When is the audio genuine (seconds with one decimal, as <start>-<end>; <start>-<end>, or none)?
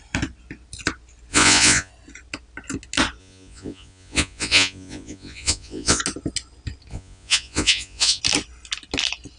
0.0-1.3; 1.9-3.2; 6.0-6.9; 8.2-9.4